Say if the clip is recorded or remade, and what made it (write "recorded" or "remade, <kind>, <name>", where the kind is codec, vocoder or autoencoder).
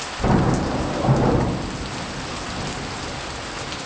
recorded